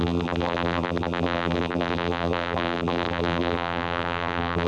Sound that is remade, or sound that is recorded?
remade